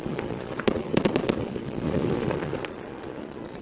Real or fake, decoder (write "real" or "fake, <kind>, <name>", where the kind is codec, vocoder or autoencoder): fake, vocoder, Vocos